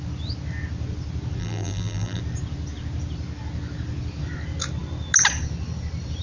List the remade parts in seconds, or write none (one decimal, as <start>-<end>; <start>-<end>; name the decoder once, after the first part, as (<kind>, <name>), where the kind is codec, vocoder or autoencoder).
1.4-2.2 (vocoder, BigVGAN v2)